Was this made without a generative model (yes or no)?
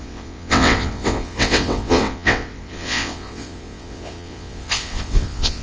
no